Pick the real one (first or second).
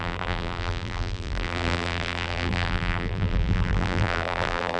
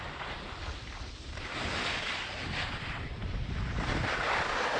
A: second